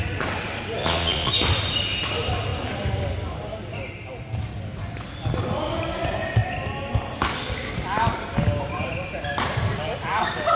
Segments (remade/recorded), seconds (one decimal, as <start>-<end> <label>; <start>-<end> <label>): 0.0-0.8 recorded; 0.8-1.3 remade; 1.3-10.6 recorded